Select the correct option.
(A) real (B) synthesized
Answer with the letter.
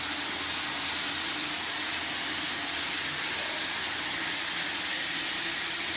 A